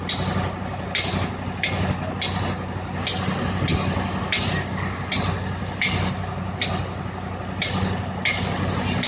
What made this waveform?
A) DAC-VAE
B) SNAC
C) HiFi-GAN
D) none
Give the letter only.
D